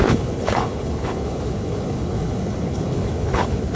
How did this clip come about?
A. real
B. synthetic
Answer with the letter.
B